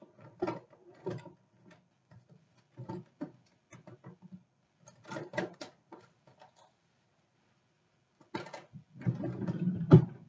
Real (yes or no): yes